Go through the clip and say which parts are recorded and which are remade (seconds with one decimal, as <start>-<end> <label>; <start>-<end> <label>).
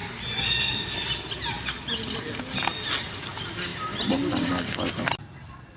0.0-5.8 recorded